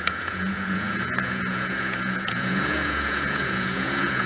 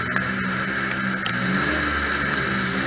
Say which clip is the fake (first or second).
first